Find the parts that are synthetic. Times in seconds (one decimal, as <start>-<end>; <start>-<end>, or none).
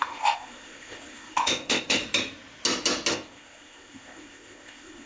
0.0-2.0; 3.1-5.1